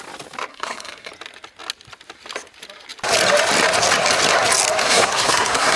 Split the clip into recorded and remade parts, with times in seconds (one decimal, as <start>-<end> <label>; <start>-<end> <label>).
0.0-0.5 recorded; 0.5-1.1 remade; 1.1-4.8 recorded; 4.8-5.8 remade